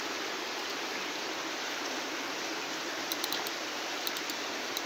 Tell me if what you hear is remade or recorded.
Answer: remade